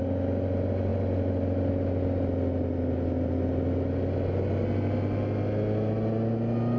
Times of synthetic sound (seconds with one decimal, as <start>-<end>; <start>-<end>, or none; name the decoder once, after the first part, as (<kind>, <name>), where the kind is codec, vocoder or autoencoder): none